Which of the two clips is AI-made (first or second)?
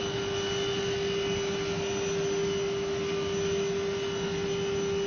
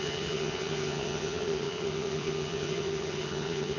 second